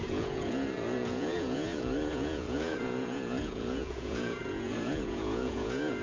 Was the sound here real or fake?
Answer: fake